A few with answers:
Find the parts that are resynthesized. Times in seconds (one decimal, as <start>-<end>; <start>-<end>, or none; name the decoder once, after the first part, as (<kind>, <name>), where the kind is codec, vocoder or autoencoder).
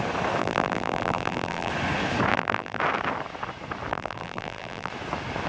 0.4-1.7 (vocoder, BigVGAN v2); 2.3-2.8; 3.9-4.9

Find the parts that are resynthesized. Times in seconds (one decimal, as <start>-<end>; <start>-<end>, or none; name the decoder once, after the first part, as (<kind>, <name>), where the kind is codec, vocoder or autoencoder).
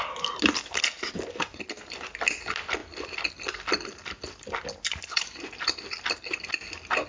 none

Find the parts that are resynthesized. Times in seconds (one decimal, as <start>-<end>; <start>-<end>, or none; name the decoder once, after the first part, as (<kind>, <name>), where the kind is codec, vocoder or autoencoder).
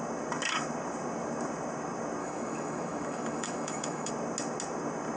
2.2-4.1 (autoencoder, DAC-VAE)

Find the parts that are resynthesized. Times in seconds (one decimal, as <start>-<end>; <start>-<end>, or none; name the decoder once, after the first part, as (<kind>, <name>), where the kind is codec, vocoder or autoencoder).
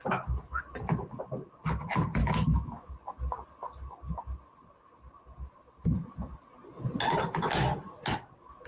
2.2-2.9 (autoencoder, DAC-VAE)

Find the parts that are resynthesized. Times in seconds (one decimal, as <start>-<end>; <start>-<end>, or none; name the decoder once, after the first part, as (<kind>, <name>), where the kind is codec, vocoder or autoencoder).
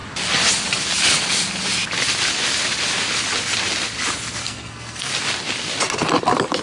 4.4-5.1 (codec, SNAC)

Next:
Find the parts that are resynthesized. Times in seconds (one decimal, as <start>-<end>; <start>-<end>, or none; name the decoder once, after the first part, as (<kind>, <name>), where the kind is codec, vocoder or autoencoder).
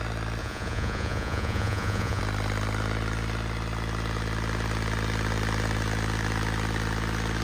0.4-2.2 (vocoder, Vocos)